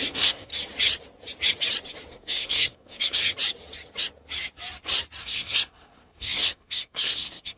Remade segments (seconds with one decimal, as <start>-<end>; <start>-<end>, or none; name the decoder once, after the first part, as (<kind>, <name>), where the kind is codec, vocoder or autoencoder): 0.0-0.5 (codec, SNAC); 2.1-3.3; 5.2-7.6